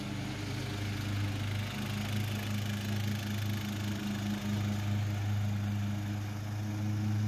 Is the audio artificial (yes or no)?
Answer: no